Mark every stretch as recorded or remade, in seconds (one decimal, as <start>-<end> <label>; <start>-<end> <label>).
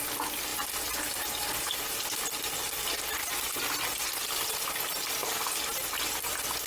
0.0-6.7 recorded